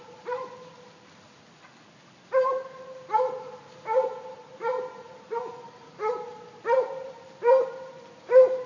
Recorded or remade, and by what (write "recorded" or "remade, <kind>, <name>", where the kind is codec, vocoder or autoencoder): recorded